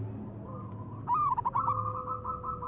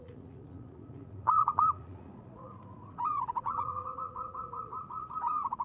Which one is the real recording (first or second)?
first